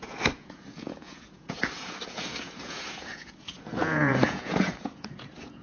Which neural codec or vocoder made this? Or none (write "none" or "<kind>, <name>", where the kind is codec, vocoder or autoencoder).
vocoder, Vocos